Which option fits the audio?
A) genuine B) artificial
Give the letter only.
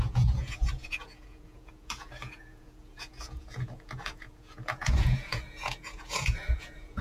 B